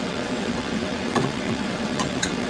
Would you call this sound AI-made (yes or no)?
yes